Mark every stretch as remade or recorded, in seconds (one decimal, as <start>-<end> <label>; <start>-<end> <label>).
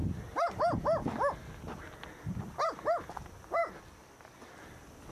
0.0-5.1 recorded